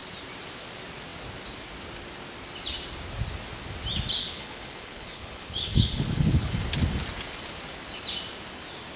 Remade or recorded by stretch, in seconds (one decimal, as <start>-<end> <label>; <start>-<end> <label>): 0.0-4.2 recorded; 4.2-6.5 remade; 6.5-9.0 recorded